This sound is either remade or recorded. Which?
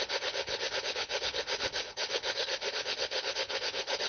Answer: remade